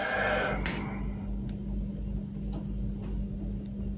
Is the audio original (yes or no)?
yes